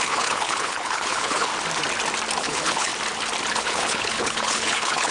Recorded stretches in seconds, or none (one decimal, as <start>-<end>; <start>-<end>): 1.5-2.4; 2.9-3.5